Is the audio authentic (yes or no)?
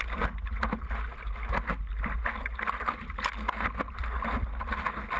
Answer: yes